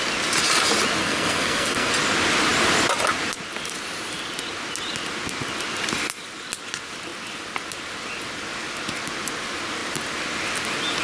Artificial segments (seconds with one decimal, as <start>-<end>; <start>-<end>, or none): 1.0-1.9